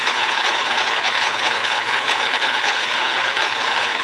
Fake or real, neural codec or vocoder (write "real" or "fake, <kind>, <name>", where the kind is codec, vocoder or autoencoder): fake, codec, HILCodec